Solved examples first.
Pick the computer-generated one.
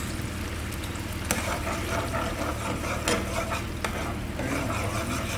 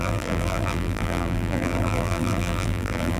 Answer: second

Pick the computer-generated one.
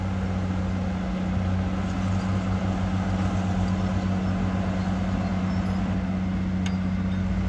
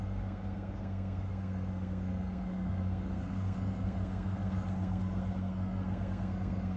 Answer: second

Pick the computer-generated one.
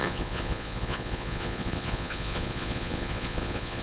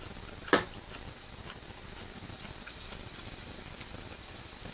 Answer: first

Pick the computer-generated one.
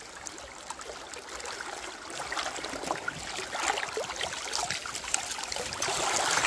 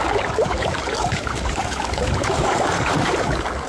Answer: second